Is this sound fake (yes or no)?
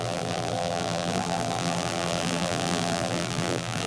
yes